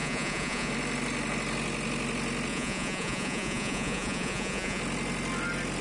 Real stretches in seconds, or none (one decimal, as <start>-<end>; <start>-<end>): 0.7-2.5; 4.8-5.8